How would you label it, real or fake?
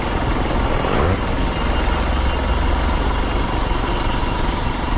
real